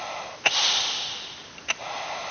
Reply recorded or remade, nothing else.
recorded